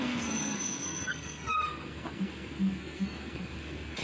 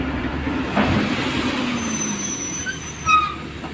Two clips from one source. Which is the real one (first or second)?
second